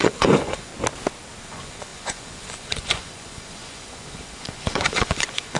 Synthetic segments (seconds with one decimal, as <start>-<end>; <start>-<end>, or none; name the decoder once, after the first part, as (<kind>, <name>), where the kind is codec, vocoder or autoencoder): 0.0-0.7 (vocoder, Vocos); 1.4-5.6